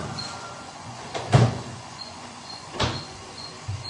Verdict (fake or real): fake